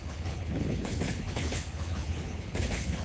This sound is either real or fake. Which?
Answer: fake